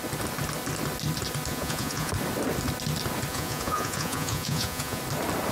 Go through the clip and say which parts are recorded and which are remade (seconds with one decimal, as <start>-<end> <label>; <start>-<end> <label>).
0.0-1.5 recorded; 1.5-2.1 remade; 2.1-3.3 recorded; 3.3-5.0 remade; 5.0-5.5 recorded